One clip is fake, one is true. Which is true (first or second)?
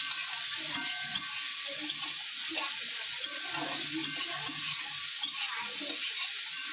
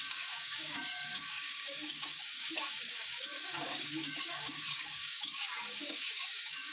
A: first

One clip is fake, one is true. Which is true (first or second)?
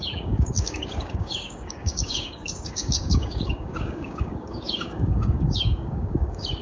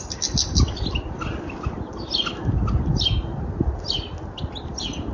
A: second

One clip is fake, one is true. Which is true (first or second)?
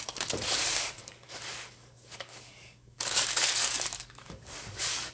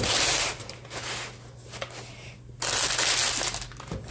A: second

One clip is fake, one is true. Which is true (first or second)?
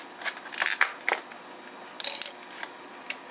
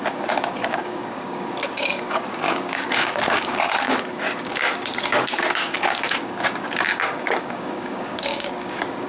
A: first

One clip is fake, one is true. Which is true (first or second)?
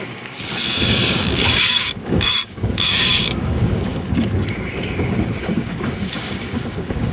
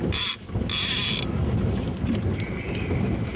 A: second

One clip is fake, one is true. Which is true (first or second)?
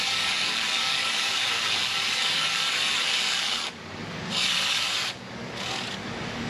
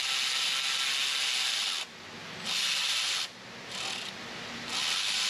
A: second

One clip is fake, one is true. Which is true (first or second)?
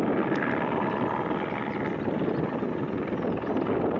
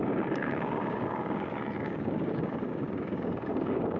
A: first